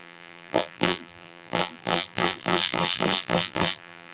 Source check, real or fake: fake